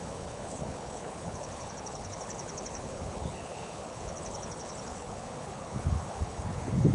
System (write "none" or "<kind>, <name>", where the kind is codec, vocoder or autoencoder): codec, HILCodec